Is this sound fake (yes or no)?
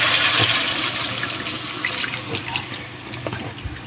no